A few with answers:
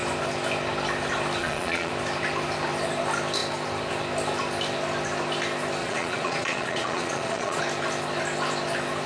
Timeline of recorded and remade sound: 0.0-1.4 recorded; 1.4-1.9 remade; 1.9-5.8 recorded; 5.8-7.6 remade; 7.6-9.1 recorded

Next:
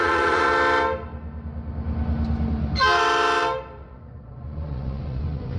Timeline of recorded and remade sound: 0.0-0.5 remade; 0.5-3.8 recorded; 3.8-5.6 remade

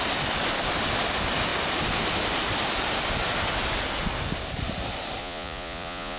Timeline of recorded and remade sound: 0.0-5.2 recorded; 5.2-6.2 remade

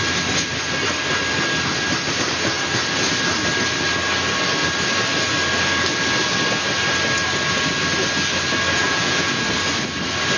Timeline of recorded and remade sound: 0.0-8.7 recorded; 8.7-9.4 remade; 9.4-10.4 recorded

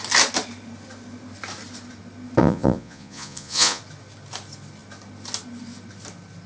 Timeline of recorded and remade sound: 0.0-2.4 recorded; 2.4-3.8 remade; 3.8-6.5 recorded